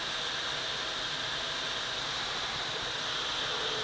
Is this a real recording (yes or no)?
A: yes